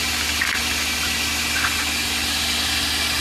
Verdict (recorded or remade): recorded